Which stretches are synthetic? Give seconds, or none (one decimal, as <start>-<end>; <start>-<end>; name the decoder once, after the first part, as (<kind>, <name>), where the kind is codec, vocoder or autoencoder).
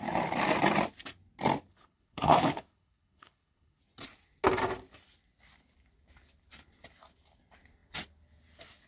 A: 1.7-3.8 (codec, HILCodec)